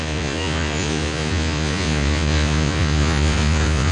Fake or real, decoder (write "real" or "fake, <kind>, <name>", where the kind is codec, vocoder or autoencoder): fake, vocoder, Vocos